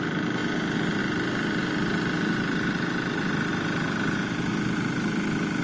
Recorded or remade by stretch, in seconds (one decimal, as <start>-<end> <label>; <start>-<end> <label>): 0.0-5.6 recorded